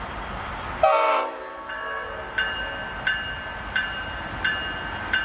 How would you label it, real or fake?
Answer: real